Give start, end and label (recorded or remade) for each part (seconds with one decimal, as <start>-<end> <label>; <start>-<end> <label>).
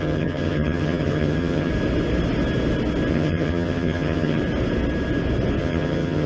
0.0-1.7 remade; 1.7-3.1 recorded; 3.1-4.4 remade; 4.4-5.6 recorded; 5.6-6.3 remade